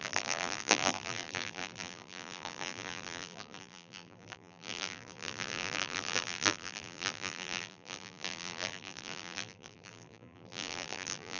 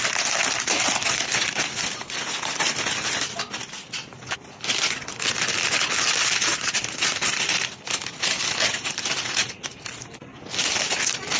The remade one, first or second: first